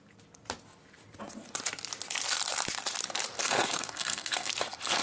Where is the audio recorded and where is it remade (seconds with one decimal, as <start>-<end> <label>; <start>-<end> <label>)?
0.0-3.4 recorded; 3.4-4.5 remade; 4.5-5.0 recorded